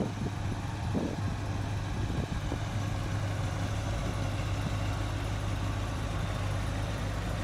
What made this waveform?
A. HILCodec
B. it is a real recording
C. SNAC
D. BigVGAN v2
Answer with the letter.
B